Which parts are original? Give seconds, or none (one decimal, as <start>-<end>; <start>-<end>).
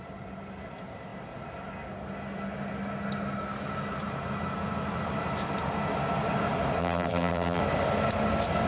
0.0-6.8; 7.6-8.7